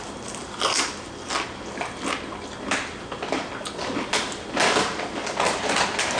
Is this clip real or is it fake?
real